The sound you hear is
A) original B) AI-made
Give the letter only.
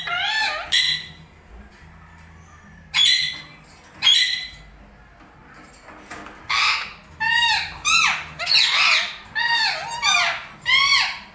A